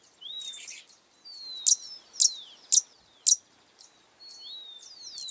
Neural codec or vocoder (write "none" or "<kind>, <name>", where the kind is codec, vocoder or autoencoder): none